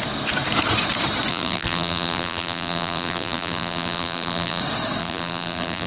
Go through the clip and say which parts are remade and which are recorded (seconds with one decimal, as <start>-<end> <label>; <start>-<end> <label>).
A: 0.0-1.3 recorded; 1.3-4.6 remade; 4.6-5.0 recorded; 5.0-5.9 remade